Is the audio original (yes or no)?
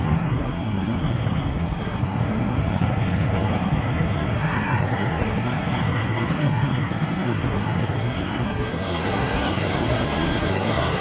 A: no